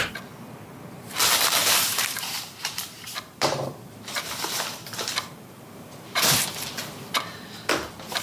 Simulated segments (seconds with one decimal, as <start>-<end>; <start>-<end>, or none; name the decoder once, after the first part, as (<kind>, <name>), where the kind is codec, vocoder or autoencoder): 1.6-6.5 (vocoder, BigVGAN v2)